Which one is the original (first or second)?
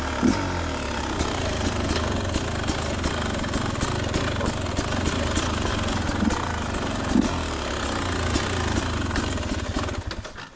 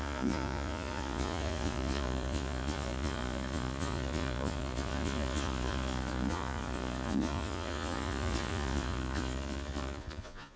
first